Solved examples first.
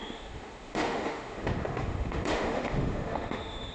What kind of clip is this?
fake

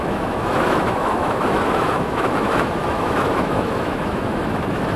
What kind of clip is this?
fake